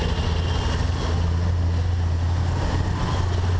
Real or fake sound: real